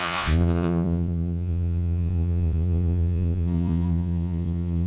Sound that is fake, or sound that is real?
fake